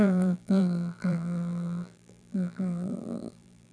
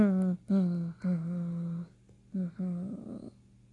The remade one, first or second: first